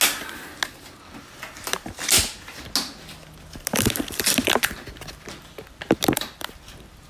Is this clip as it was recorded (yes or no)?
yes